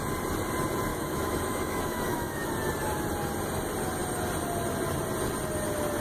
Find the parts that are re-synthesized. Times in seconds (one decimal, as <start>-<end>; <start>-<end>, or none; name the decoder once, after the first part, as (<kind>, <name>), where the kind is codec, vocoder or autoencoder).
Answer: 0.9-2.5 (autoencoder, DAC-VAE)